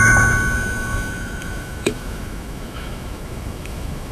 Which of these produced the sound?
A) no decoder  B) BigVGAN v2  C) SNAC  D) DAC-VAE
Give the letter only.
D